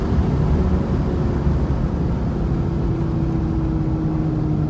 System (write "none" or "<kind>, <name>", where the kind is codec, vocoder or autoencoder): none